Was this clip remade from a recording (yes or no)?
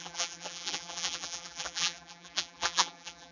yes